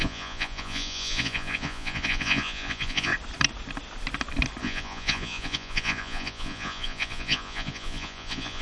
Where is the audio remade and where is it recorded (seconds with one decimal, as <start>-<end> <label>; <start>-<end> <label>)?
0.0-3.1 remade; 3.1-4.6 recorded; 4.6-8.6 remade